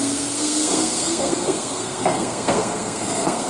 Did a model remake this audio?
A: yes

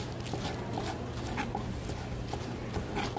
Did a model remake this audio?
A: no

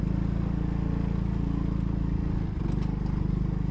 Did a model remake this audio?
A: no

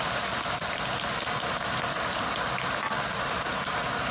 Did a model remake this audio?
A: no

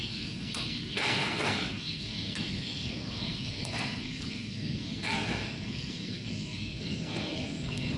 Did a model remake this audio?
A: yes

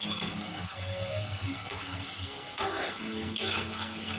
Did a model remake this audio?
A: yes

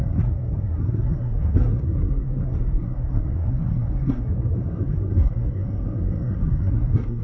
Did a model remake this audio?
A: yes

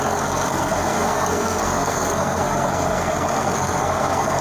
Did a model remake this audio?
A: yes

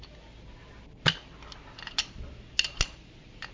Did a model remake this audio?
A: no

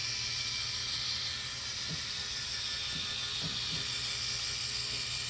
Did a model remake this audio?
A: no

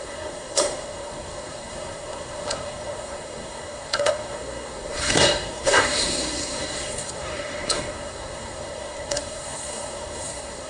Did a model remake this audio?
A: yes